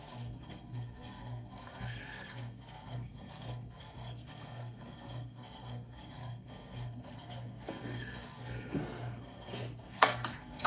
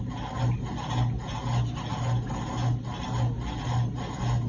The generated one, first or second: first